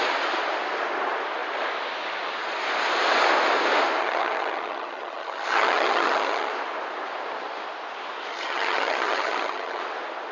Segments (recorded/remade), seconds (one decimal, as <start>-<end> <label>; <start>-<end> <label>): 0.0-4.0 recorded; 4.0-6.5 remade; 6.5-8.3 recorded; 8.3-9.8 remade; 9.8-10.3 recorded